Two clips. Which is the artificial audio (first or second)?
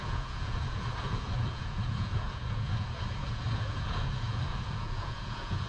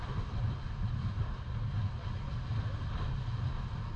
first